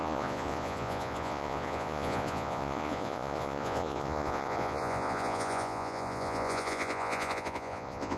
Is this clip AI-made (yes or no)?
yes